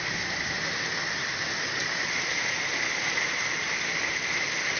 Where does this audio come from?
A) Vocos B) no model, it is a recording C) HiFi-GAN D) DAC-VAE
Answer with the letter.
B